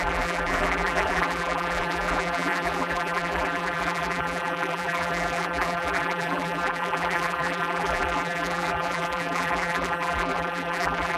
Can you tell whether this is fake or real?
fake